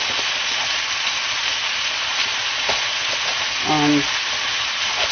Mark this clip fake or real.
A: real